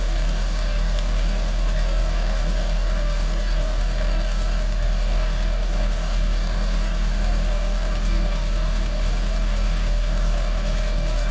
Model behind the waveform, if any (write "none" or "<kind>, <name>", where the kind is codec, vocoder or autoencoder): codec, DAC